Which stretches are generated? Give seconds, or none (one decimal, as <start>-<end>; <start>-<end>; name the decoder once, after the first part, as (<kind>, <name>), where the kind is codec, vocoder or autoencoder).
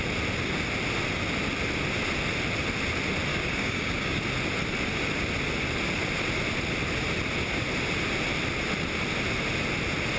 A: 3.3-4.2 (codec, DAC)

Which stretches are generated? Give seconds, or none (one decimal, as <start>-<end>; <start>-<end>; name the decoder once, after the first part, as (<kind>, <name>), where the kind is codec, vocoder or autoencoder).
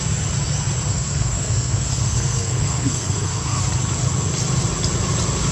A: 0.9-3.6 (codec, SNAC)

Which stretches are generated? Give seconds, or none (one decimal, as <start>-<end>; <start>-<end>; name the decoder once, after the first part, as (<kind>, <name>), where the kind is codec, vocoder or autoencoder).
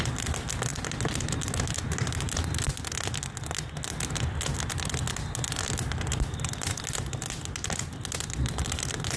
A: none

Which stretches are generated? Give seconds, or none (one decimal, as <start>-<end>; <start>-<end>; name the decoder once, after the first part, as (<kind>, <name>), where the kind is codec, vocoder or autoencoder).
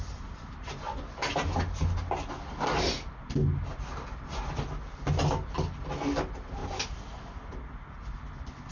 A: none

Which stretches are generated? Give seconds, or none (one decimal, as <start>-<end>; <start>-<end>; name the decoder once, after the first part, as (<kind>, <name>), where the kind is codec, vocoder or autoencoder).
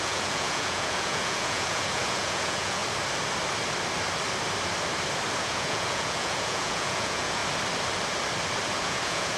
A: 0.0-2.8 (vocoder, Vocos); 5.4-7.4; 8.7-9.4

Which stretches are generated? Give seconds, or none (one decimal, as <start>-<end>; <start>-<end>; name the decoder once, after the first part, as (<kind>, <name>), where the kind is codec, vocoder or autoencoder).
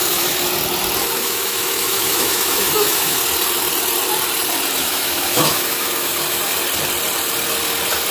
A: 0.0-0.5 (autoencoder, DAC-VAE); 1.0-3.2; 4.8-6.4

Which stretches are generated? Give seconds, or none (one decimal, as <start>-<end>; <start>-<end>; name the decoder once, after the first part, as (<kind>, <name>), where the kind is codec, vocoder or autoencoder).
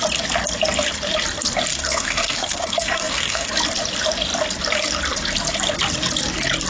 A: 1.7-3.5 (codec, SNAC)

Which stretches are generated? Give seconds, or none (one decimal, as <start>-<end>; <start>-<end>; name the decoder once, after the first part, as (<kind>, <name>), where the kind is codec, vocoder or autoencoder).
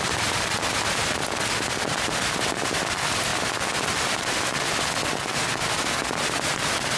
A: none